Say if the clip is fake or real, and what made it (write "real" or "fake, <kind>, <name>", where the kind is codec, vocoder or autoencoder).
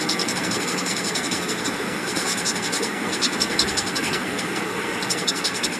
fake, codec, SNAC